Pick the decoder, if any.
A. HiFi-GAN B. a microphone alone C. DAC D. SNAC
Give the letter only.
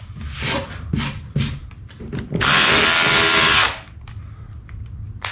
B